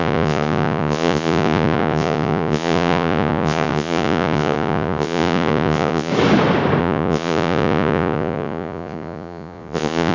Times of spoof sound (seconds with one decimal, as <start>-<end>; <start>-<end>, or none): 0.0-6.1; 6.8-10.1